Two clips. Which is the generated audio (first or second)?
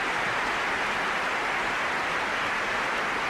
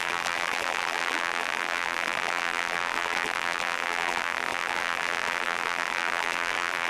second